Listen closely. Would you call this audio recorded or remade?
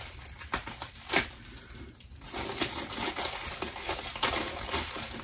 recorded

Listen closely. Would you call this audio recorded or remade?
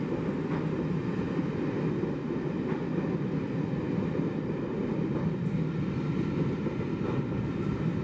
recorded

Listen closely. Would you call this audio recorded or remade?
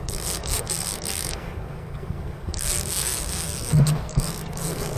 remade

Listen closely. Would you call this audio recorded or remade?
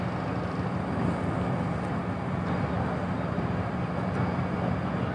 recorded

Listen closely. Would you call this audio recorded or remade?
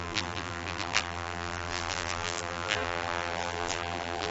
remade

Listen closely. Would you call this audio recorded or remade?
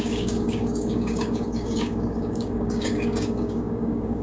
remade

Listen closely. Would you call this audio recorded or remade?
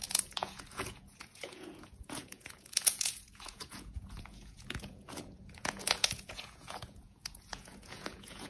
remade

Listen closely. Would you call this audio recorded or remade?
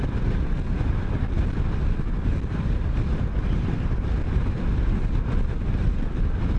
recorded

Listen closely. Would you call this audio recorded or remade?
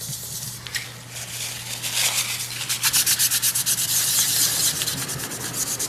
recorded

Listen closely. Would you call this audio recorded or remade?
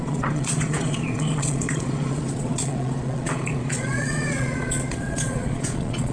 remade